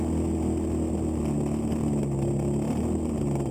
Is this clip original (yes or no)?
yes